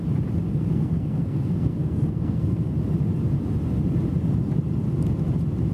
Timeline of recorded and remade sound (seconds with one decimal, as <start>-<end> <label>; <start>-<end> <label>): 0.0-0.5 recorded; 0.5-2.7 remade; 2.7-5.7 recorded